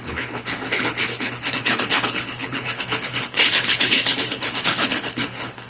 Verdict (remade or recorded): remade